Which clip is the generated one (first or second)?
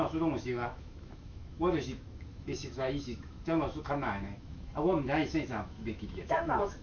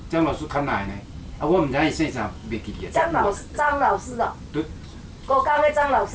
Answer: first